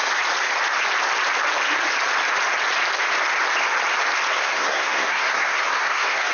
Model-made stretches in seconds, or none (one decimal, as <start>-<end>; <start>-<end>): 4.3-6.3